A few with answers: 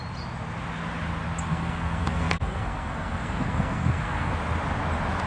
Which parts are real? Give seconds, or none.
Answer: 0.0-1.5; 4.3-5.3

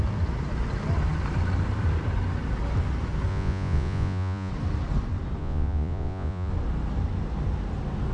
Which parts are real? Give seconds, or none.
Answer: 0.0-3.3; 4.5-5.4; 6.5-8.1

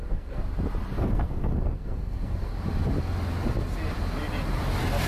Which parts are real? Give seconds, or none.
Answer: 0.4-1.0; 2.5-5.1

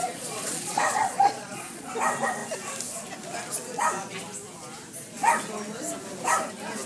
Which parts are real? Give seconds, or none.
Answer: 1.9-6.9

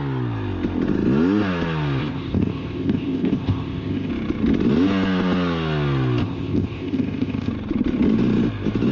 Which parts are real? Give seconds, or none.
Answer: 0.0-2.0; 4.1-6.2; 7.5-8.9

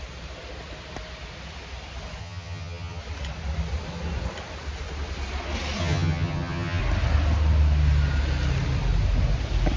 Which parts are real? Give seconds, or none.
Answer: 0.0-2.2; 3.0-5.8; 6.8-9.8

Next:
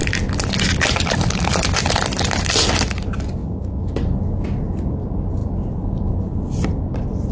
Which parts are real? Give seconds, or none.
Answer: 0.0-3.4; 3.9-7.3